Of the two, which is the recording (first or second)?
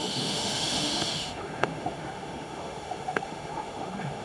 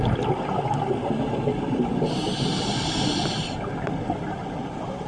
second